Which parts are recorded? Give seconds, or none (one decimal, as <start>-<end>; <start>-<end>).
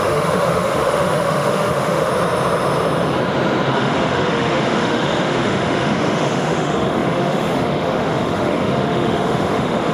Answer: 2.1-3.7